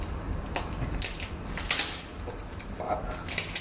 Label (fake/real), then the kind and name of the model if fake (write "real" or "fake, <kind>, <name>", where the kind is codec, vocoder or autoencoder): real